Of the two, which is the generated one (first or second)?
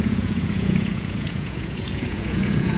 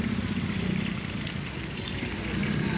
first